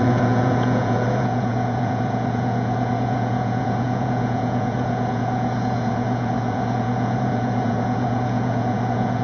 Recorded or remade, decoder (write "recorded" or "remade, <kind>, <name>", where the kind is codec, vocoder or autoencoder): remade, vocoder, Vocos